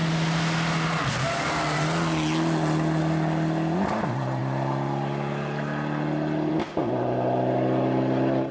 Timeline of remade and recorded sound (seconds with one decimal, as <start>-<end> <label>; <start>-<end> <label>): 0.0-8.5 recorded